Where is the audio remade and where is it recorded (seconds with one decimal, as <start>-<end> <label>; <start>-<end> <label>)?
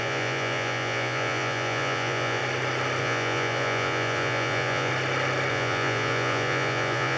0.0-2.4 remade; 2.4-3.0 recorded; 3.0-4.9 remade; 4.9-5.5 recorded; 5.5-7.2 remade